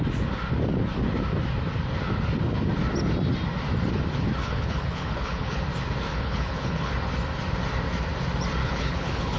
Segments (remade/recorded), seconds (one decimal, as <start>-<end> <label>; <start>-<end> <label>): 0.0-4.4 recorded; 4.4-5.6 remade; 5.6-6.1 recorded; 6.1-6.9 remade; 6.9-8.6 recorded; 8.6-9.4 remade